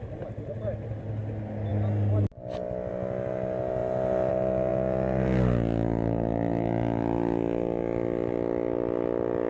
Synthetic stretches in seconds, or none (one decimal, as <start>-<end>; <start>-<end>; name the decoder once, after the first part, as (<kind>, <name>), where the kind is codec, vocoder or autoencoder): none